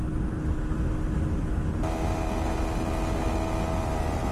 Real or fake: real